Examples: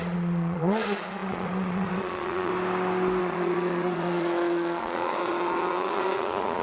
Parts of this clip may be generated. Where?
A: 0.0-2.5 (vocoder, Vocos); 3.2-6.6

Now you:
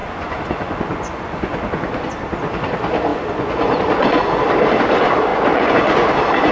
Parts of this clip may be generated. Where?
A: 0.0-2.1 (vocoder, Vocos); 3.1-4.4; 5.3-6.1

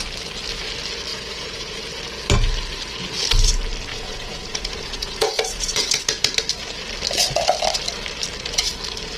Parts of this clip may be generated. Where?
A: 1.1-1.8 (vocoder, Vocos); 3.9-6.0

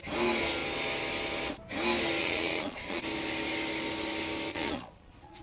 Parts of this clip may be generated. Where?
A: 2.2-3.0 (vocoder, Vocos); 4.5-5.4

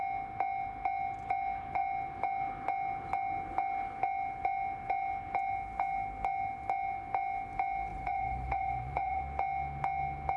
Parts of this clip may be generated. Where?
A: 7.9-9.2 (vocoder, Vocos)

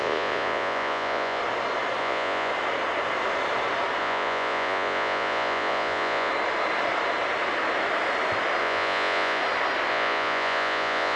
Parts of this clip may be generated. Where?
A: 0.0-1.4 (vocoder, Vocos); 2.0-2.5; 4.0-6.3; 8.6-9.4; 9.9-11.2

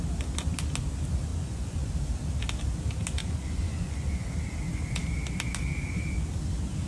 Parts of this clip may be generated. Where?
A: 1.3-1.9 (vocoder, Vocos); 3.2-4.4

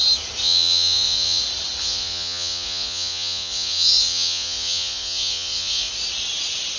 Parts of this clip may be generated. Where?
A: 0.4-1.4 (vocoder, Vocos); 1.8-5.9